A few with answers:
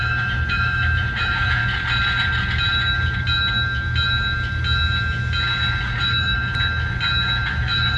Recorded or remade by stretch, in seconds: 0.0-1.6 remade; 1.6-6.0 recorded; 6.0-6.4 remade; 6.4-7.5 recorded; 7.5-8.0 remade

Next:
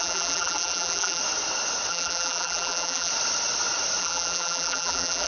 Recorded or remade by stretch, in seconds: 0.0-1.2 remade; 1.2-1.9 recorded; 1.9-3.1 remade; 3.1-4.0 recorded; 4.0-5.3 remade

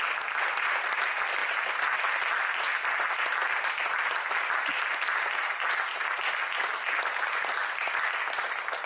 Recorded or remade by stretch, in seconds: 0.0-1.4 recorded; 1.4-2.0 remade; 2.0-8.9 recorded

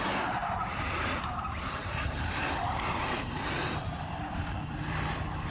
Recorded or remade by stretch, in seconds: 0.0-0.4 recorded; 0.4-1.2 remade; 1.2-1.8 recorded; 1.8-5.1 remade; 5.1-5.5 recorded

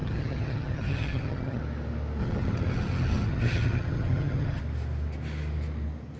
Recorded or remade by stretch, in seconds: 0.0-1.6 remade; 1.6-2.2 recorded; 2.2-4.6 remade; 4.6-6.2 recorded

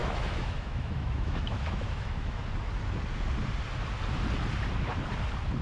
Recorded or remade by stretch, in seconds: 0.0-2.4 remade; 2.4-5.6 recorded

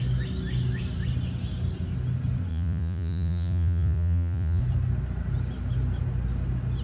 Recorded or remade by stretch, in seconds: 0.0-2.5 recorded; 2.5-4.6 remade; 4.6-6.8 recorded